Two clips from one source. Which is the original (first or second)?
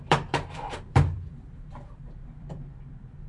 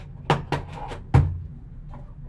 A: second